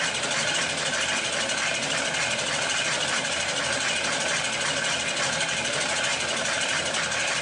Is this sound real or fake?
real